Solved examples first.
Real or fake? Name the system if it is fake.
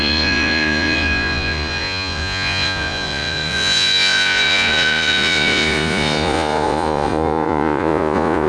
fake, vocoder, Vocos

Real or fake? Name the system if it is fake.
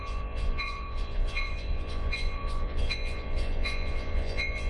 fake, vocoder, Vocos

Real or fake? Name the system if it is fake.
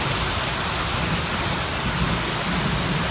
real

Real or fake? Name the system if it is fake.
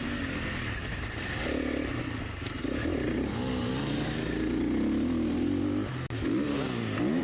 real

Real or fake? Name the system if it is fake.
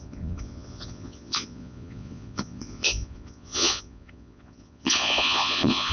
fake, vocoder, Vocos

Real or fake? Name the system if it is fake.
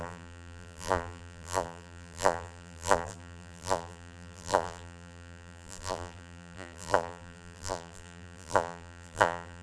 fake, vocoder, BigVGAN v2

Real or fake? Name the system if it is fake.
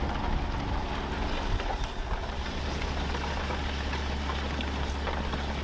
real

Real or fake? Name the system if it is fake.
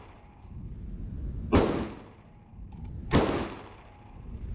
fake, vocoder, BigVGAN v2